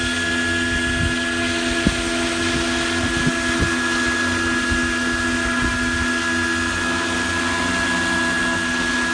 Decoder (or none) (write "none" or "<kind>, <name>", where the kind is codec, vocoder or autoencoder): none